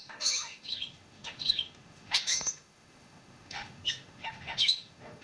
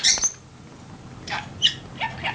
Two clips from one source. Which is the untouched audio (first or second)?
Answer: second